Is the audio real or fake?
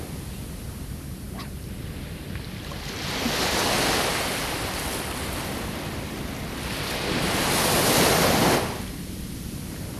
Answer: real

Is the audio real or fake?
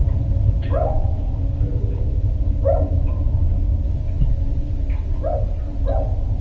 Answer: real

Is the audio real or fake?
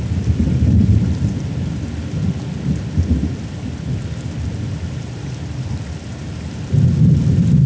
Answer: real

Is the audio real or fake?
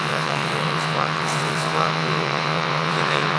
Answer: fake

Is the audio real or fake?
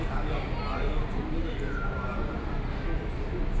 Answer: real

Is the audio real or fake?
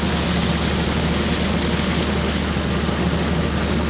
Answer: real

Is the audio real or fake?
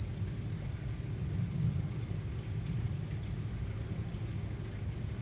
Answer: real